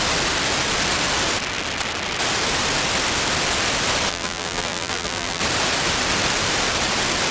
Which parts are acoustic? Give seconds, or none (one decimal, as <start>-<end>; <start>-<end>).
0.0-4.1; 5.4-7.3